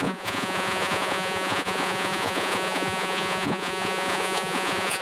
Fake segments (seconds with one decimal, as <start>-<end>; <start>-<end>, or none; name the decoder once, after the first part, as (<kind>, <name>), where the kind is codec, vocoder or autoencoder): 0.0-5.0 (vocoder, Vocos)